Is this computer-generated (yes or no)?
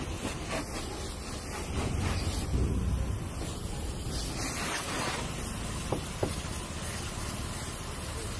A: no